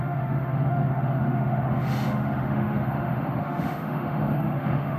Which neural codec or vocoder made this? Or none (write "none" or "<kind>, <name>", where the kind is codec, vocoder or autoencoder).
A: autoencoder, DAC-VAE